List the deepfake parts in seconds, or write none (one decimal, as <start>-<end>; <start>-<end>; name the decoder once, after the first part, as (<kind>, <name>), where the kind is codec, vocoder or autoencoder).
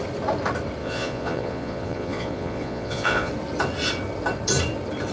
0.8-3.3 (vocoder, Vocos)